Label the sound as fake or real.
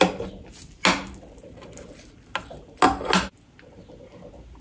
real